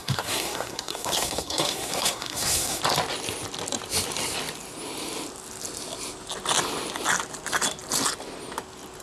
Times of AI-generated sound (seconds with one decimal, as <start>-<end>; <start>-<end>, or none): 0.0-2.8